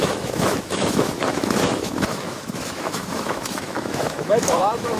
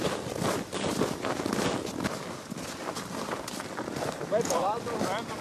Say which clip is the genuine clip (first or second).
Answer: second